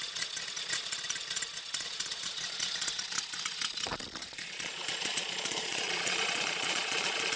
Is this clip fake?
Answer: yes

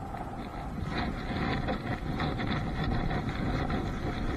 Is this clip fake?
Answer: no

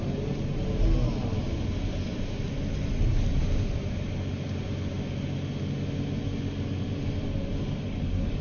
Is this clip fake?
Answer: no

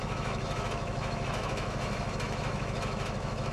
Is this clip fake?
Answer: yes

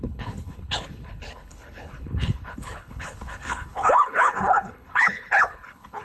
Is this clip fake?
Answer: yes